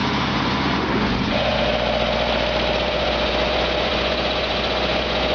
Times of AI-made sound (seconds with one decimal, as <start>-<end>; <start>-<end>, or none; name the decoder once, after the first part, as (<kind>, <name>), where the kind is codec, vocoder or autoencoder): 0.0-1.7 (vocoder, Vocos); 2.8-5.3